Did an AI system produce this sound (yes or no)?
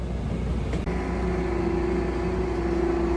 no